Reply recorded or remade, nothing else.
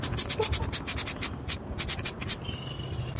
recorded